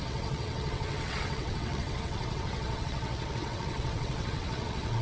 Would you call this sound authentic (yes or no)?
no